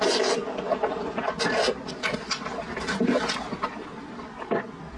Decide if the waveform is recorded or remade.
remade